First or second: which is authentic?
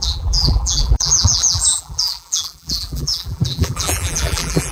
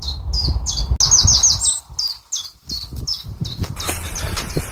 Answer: second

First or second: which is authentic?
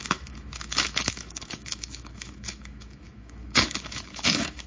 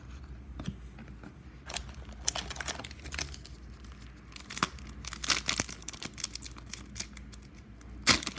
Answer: second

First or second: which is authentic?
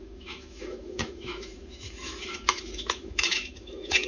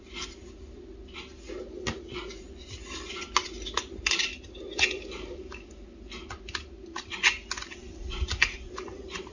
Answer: second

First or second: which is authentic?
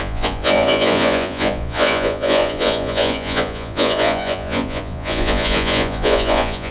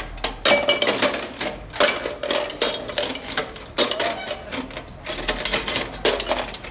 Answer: second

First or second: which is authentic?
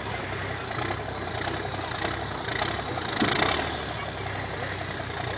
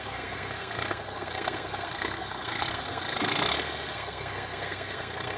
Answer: first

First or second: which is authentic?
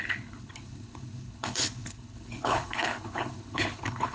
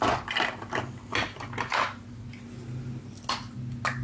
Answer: second